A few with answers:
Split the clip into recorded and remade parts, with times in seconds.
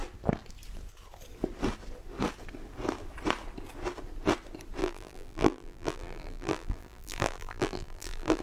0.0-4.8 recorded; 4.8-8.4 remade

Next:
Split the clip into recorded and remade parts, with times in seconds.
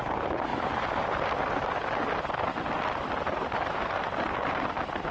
0.0-5.1 recorded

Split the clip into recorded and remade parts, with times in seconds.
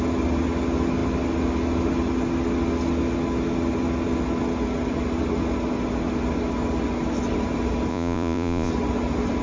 0.0-7.9 recorded; 7.9-8.7 remade; 8.7-9.4 recorded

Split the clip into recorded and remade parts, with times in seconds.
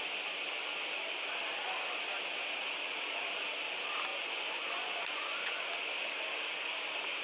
0.0-4.1 recorded; 4.1-5.7 remade; 5.7-7.2 recorded